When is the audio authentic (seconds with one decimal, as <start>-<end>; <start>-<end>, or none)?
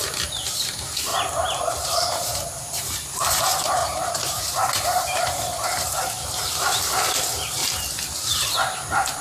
7.6-9.2